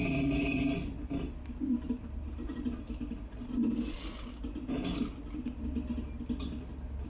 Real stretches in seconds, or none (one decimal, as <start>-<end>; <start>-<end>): 0.0-7.1